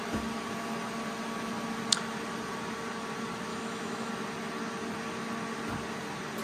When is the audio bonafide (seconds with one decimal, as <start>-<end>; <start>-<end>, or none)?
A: 0.0-3.5; 4.1-6.4